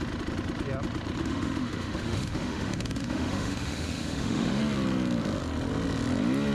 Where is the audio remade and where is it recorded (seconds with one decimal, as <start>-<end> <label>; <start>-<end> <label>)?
0.0-1.2 recorded; 1.2-4.6 remade; 4.6-6.5 recorded